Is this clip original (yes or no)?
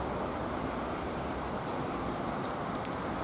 yes